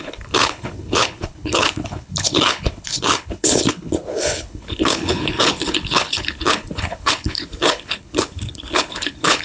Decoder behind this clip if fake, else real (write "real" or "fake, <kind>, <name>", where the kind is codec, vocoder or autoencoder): fake, codec, HILCodec